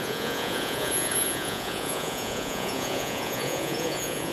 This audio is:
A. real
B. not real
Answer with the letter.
B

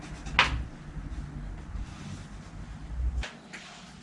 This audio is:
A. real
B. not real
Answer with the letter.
A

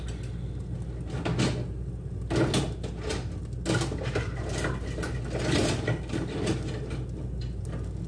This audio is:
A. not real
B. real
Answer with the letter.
B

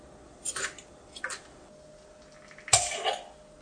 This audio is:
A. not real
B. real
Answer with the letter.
B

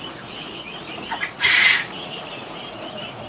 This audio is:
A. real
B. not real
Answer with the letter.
B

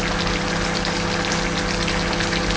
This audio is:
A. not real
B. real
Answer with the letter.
B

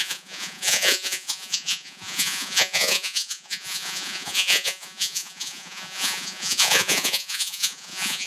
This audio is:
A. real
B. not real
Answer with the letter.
B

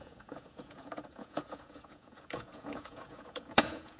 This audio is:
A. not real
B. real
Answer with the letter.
A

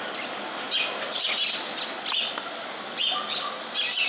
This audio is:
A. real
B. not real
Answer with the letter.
A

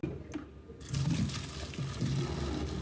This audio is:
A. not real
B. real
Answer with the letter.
B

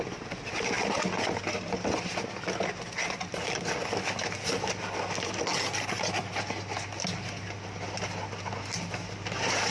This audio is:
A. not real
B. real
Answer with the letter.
B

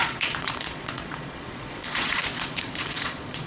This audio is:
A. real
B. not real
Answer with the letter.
B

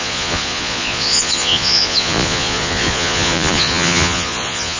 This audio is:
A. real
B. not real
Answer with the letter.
B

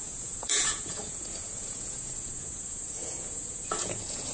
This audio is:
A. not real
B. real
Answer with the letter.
A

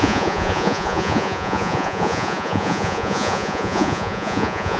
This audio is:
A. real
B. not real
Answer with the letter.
B